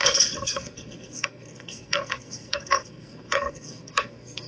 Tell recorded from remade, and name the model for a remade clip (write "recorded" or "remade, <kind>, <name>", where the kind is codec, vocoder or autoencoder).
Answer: remade, codec, SNAC